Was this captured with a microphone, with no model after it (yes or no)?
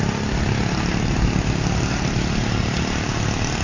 yes